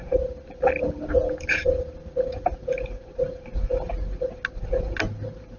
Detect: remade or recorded recorded